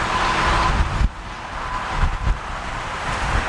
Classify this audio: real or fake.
real